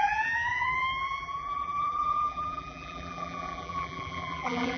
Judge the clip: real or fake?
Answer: fake